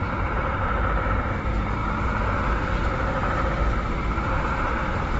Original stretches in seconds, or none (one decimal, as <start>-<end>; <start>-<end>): 0.8-5.2